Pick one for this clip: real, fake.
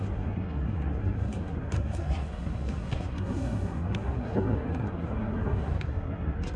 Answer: fake